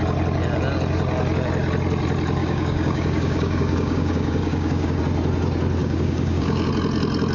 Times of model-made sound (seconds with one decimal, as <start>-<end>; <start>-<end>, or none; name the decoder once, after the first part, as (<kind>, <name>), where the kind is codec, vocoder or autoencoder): 2.4-5.0 (codec, DAC); 5.8-6.7